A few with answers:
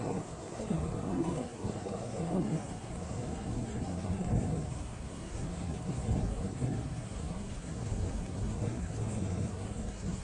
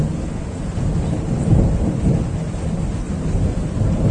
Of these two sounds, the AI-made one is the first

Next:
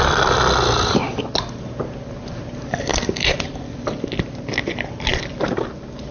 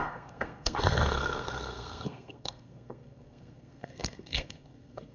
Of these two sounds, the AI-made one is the second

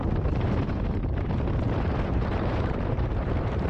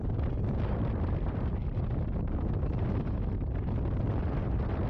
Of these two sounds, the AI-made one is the first